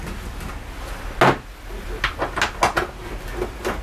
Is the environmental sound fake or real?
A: real